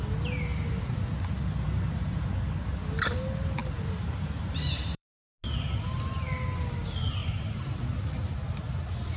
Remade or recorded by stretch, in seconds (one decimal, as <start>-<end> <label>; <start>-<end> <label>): 0.0-3.6 recorded; 3.6-5.1 remade; 5.1-7.2 recorded; 7.2-7.8 remade; 7.8-9.2 recorded